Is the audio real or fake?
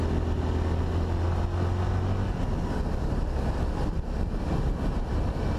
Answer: real